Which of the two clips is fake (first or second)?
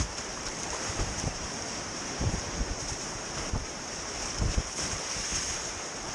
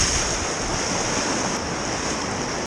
first